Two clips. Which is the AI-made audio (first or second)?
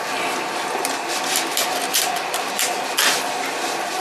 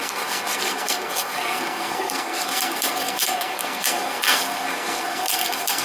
second